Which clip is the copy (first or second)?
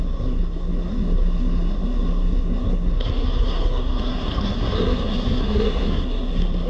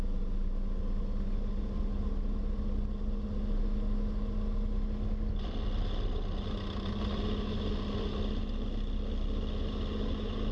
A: first